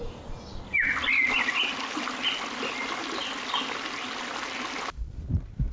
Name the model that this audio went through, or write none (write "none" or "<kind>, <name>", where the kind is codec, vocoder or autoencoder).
none